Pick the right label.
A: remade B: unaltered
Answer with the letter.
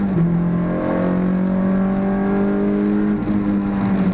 B